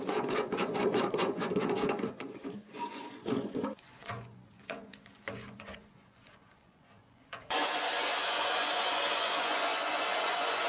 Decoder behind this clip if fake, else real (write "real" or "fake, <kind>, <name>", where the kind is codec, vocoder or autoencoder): fake, vocoder, Vocos